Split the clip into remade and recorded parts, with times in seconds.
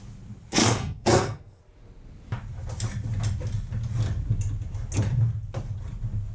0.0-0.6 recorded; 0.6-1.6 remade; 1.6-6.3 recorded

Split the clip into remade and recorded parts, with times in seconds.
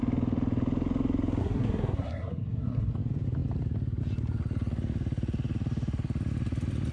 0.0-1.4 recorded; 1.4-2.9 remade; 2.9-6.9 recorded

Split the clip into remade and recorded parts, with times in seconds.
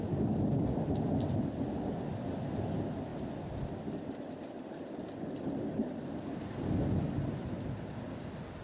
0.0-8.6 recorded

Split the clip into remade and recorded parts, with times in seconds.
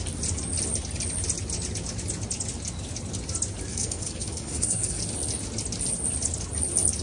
0.0-3.7 recorded; 3.7-5.0 remade; 5.0-7.0 recorded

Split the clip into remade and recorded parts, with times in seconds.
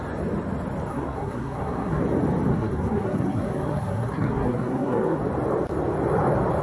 0.0-0.9 recorded; 0.9-2.0 remade; 2.0-2.5 recorded; 2.5-5.2 remade; 5.2-6.6 recorded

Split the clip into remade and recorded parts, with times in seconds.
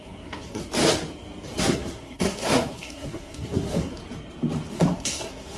0.0-0.6 remade; 0.6-1.6 recorded; 1.6-4.0 remade; 4.0-4.7 recorded; 4.7-5.6 remade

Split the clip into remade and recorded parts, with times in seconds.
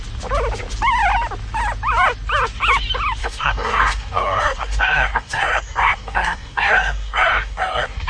0.0-3.2 recorded; 3.2-8.1 remade